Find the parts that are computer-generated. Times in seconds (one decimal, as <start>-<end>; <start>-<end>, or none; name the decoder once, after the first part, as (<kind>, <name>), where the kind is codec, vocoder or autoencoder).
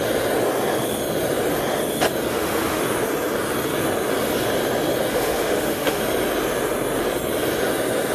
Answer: 2.3-2.8 (autoencoder, DAC-VAE); 5.1-6.0